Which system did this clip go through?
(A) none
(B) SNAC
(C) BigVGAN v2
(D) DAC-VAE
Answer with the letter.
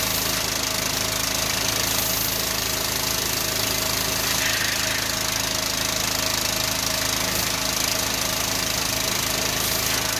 A